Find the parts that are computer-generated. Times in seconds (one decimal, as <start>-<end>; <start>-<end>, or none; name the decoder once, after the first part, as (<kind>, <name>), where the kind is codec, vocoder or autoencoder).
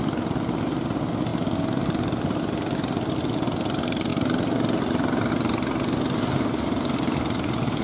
none